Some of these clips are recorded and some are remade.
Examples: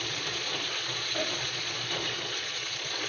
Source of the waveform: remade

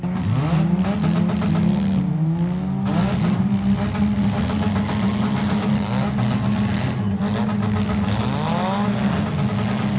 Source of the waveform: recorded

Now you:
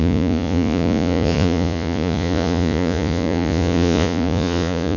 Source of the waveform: remade